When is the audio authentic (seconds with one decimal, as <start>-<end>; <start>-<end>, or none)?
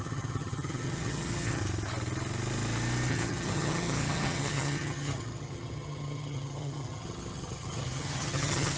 1.6-3.1